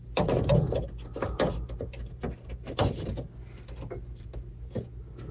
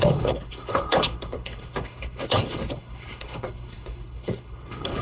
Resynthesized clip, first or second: second